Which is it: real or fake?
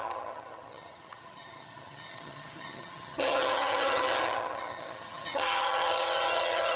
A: fake